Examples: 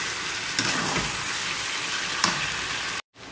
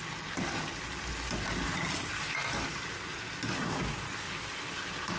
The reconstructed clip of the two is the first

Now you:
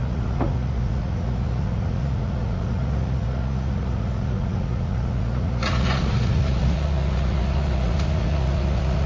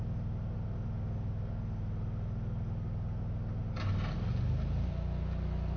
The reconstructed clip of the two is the first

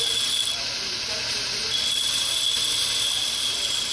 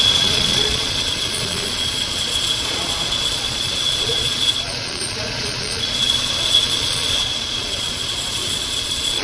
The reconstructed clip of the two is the second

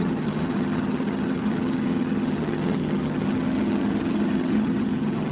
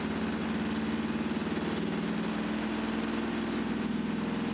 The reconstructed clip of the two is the first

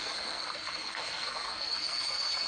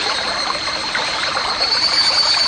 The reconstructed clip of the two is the first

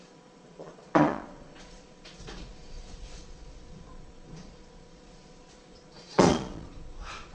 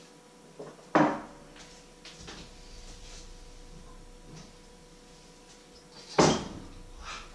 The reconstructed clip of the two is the first